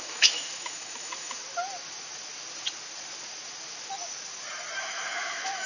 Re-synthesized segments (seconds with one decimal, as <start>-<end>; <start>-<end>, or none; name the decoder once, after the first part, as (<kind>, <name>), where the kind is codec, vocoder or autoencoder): 0.0-1.4 (autoencoder, DAC-VAE); 4.8-5.7